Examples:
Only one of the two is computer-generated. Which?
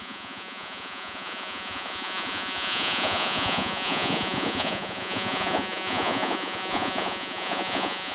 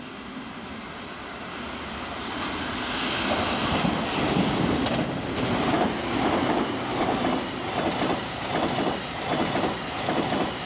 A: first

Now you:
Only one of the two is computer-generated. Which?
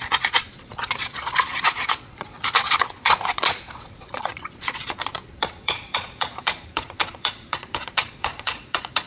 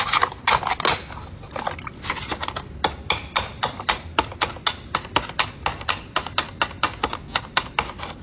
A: first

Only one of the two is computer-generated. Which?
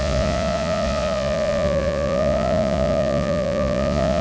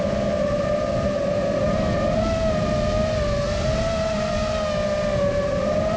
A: first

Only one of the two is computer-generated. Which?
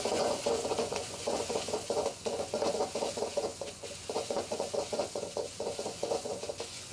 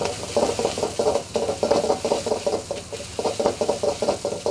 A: first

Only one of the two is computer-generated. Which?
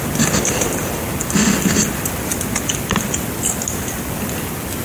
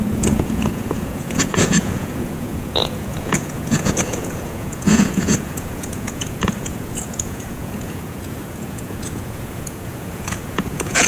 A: second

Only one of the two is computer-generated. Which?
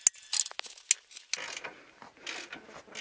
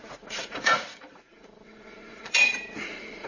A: second